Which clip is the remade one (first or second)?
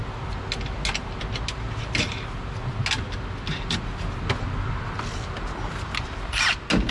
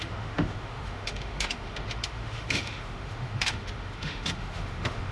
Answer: second